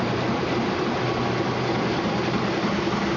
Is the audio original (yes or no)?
yes